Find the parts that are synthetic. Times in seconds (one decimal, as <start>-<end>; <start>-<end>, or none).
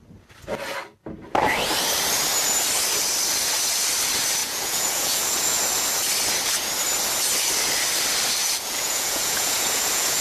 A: 4.4-5.6; 8.4-10.2